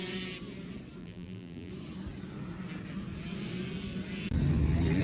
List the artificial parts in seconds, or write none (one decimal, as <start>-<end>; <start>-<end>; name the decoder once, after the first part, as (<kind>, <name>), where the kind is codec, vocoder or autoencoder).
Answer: 1.0-1.7 (vocoder, BigVGAN v2)

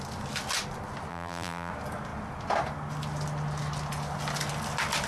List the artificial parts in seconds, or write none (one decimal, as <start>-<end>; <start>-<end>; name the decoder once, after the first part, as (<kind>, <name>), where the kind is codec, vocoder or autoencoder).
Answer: 1.1-1.7 (vocoder, BigVGAN v2)

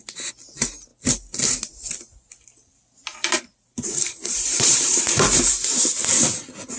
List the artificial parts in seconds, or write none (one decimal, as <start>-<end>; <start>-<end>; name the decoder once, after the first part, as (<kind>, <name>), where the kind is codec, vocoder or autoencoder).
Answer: 3.1-5.6 (vocoder, BigVGAN v2)